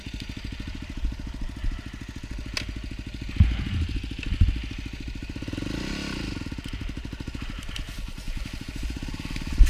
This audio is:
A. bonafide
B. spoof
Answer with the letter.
A